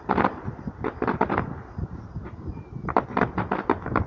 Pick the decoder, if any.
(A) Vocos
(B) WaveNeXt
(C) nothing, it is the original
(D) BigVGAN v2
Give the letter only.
D